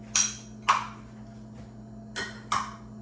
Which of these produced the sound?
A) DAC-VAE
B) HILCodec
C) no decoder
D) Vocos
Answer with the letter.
C